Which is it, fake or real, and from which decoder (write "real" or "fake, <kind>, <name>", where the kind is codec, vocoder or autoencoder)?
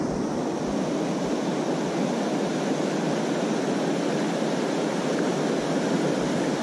real